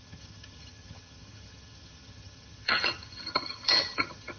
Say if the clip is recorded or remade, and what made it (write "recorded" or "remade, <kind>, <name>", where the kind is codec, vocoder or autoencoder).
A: remade, vocoder, HiFi-GAN